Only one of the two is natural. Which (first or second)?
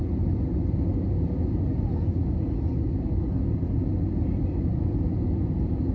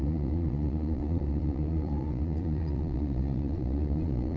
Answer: first